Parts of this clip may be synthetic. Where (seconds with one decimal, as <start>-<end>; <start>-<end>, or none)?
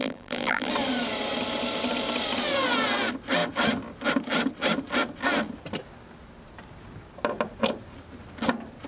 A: 0.0-0.7